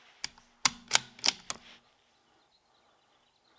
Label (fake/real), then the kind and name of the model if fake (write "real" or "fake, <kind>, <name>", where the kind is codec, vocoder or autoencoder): real